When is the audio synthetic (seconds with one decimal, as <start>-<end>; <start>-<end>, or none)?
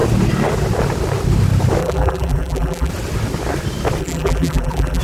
1.8-2.9; 4.0-5.0